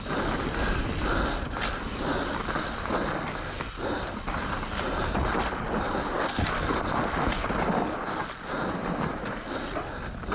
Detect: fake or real real